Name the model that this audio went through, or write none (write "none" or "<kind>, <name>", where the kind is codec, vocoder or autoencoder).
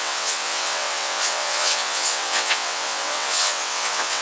vocoder, WaveNeXt